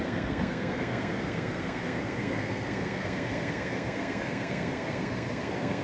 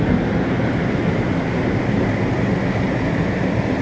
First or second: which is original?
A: second